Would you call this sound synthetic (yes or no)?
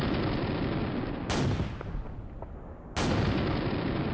no